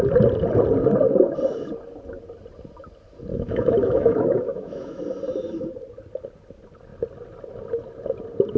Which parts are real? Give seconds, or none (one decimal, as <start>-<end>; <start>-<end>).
0.0-3.3; 5.0-8.6